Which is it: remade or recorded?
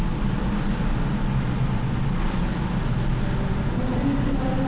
recorded